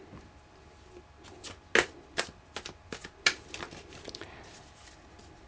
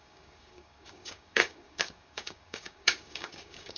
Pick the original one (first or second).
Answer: first